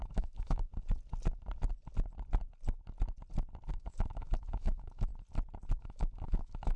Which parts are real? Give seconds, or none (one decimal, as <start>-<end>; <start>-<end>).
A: 0.7-3.7; 5.1-5.8